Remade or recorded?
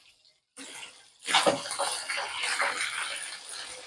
recorded